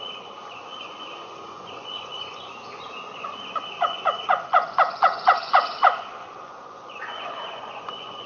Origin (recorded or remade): remade